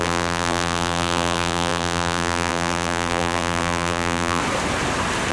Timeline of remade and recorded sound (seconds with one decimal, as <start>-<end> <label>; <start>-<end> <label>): 0.0-4.4 remade; 4.4-5.3 recorded